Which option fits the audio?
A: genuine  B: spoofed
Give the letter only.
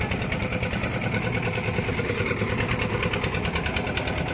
A